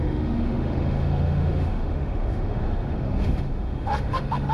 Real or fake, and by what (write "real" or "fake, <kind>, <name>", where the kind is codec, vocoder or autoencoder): fake, autoencoder, DAC-VAE